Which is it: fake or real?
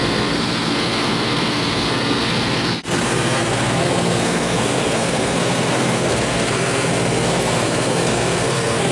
fake